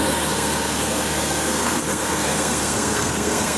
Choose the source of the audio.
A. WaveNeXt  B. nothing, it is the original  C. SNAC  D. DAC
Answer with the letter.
C